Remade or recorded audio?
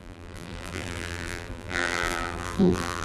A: remade